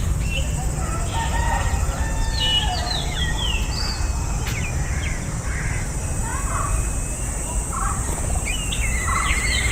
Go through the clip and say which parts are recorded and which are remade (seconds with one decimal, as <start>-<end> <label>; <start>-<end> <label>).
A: 0.0-9.7 recorded